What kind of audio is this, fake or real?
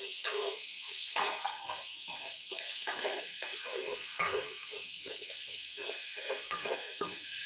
fake